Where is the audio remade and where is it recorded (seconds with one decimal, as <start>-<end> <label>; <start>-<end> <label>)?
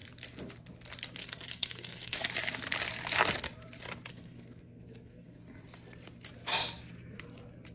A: 0.0-1.2 recorded; 1.2-2.2 remade; 2.2-4.1 recorded; 4.1-5.4 remade; 5.4-7.7 recorded